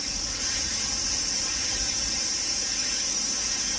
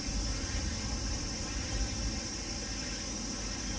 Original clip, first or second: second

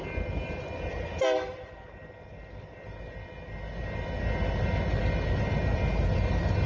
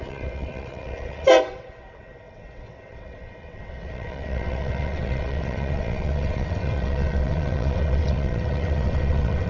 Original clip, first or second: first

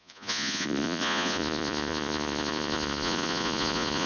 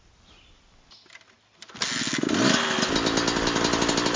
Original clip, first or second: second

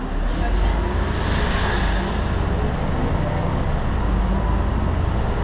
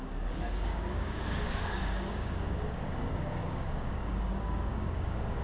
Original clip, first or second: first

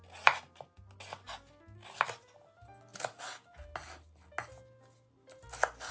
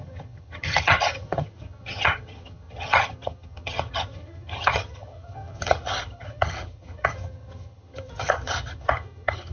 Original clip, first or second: first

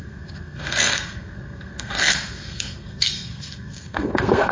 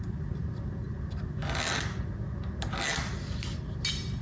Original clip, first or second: second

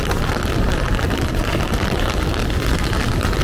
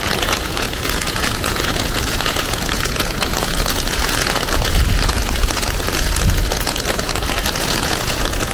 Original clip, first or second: first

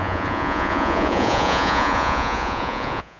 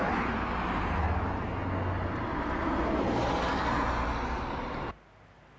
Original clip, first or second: second